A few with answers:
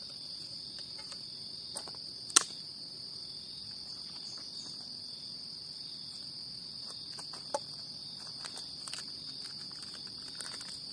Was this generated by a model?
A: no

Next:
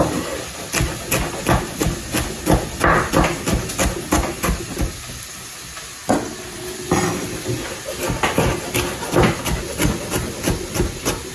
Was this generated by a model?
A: no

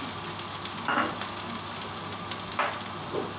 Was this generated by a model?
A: no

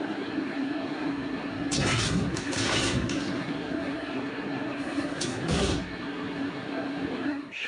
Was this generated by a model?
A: yes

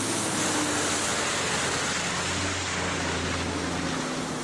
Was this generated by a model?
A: no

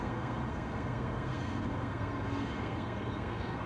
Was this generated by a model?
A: yes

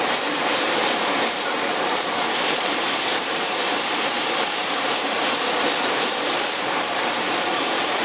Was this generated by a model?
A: yes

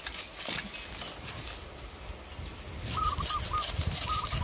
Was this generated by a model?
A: no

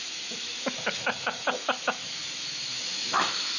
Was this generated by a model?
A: yes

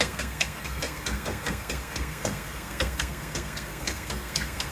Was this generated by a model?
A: yes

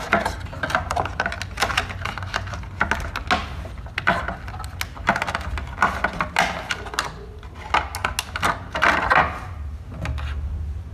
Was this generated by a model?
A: no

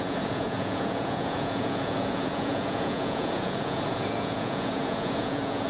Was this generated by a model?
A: yes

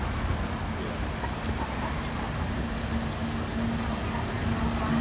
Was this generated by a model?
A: no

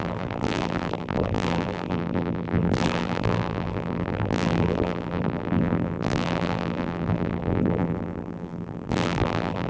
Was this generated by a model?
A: yes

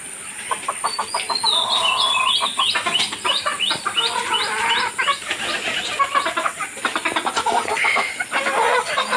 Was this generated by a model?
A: no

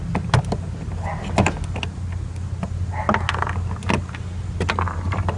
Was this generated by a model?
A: no